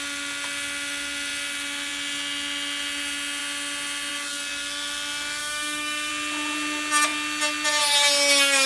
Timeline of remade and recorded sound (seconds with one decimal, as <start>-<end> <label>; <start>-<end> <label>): 0.0-5.4 recorded; 5.4-6.1 remade; 6.1-8.7 recorded